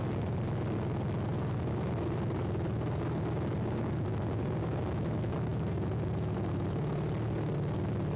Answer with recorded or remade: recorded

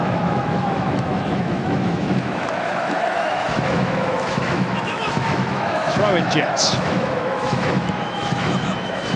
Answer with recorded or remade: remade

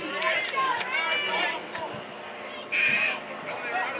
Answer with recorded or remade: recorded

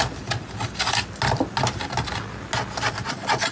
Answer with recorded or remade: recorded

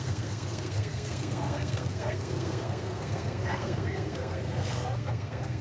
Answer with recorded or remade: remade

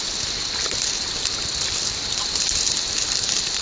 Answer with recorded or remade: recorded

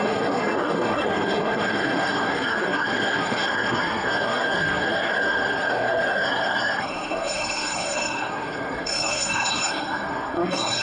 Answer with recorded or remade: remade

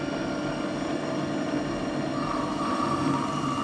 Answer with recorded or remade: recorded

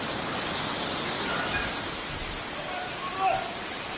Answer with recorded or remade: recorded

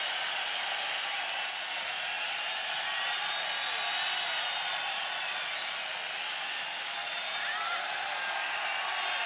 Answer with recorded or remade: recorded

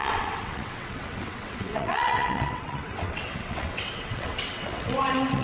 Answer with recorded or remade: remade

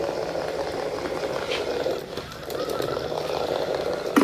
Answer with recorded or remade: recorded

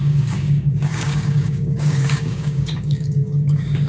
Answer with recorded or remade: remade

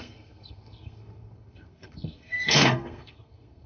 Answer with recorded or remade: remade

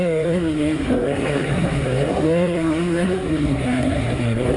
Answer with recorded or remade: remade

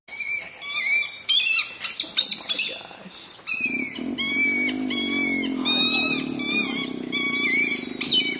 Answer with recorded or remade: recorded